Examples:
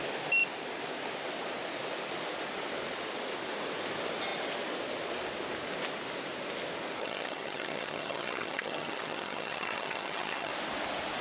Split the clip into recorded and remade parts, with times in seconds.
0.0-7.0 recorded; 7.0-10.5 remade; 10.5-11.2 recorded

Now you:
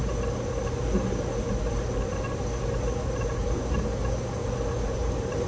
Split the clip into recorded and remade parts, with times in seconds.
0.0-3.3 recorded; 3.3-4.0 remade; 4.0-4.8 recorded; 4.8-5.5 remade

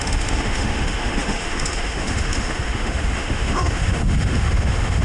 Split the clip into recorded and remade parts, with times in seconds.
0.0-5.0 remade

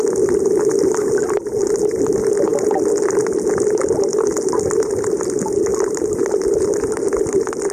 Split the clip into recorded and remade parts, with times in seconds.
0.0-7.7 recorded

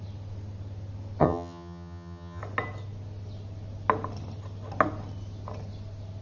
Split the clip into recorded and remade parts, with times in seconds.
0.0-1.2 recorded; 1.2-2.4 remade; 2.4-6.2 recorded

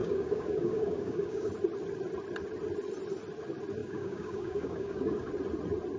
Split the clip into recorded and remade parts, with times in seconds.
0.0-1.5 remade; 1.5-3.8 recorded; 3.8-5.3 remade; 5.3-6.0 recorded